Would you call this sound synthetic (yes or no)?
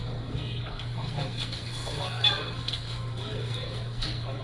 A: yes